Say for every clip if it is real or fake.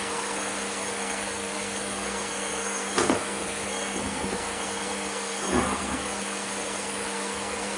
fake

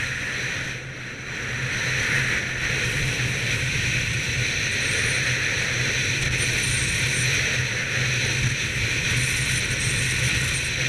real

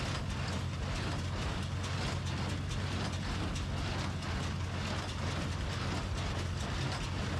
real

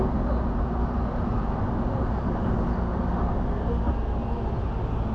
real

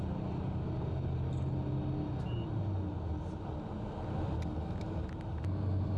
real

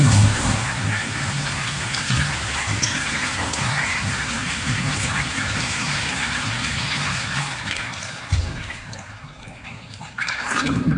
fake